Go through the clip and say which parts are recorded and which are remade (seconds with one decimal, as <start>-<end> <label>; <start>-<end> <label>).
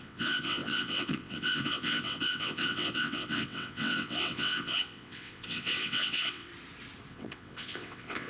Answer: 0.0-6.5 remade; 6.5-7.1 recorded; 7.1-8.3 remade